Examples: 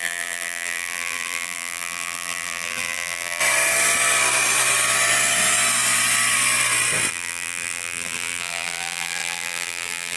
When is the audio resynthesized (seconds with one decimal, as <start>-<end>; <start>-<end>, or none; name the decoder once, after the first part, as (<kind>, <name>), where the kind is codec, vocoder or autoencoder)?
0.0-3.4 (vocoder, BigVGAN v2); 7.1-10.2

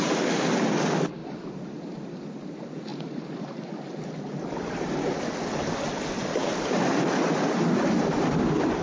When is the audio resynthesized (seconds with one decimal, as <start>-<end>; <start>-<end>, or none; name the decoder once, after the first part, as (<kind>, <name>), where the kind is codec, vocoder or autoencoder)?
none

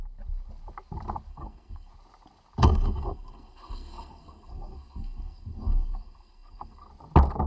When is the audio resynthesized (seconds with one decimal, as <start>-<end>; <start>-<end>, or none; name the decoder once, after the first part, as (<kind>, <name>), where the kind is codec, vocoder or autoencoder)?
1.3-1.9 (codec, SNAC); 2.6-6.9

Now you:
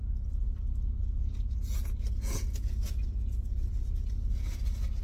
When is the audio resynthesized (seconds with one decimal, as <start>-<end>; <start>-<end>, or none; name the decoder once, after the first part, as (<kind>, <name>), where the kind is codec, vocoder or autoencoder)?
1.0-3.7 (vocoder, Vocos)

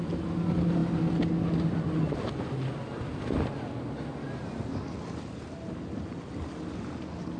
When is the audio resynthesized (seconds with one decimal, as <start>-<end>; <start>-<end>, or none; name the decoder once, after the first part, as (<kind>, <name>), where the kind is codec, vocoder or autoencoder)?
none

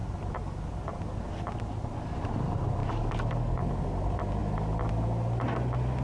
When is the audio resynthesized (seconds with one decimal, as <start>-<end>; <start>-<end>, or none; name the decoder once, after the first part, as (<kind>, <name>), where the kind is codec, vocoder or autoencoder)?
2.8-3.7 (codec, DAC)

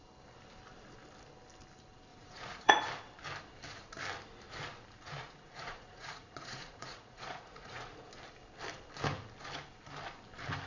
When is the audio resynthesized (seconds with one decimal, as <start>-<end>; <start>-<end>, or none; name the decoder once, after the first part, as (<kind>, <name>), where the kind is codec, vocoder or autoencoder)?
2.1-2.7 (vocoder, Vocos); 5.2-8.1

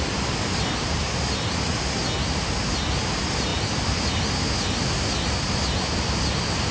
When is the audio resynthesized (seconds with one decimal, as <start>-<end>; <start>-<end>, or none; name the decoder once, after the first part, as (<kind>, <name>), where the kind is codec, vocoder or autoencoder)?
none